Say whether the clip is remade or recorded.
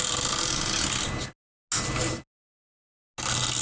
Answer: recorded